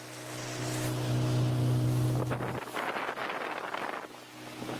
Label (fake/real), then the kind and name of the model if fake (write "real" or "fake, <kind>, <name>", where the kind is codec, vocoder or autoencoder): real